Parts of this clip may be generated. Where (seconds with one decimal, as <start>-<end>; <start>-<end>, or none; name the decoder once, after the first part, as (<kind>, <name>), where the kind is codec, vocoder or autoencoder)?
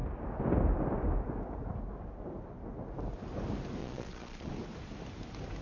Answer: 3.8-4.5 (vocoder, Vocos)